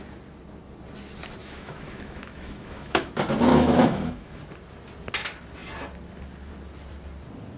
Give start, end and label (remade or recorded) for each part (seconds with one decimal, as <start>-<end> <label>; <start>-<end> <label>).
0.0-1.4 recorded; 1.4-3.1 remade; 3.1-3.5 recorded; 3.5-4.4 remade; 4.4-7.6 recorded